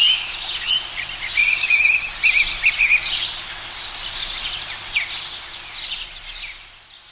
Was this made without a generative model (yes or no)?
yes